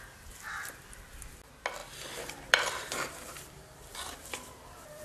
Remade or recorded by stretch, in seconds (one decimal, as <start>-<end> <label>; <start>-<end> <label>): 0.0-1.8 recorded; 1.8-5.0 remade